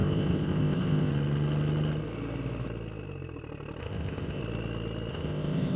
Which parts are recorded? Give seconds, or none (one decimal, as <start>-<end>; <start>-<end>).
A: 1.1-3.8; 4.4-5.1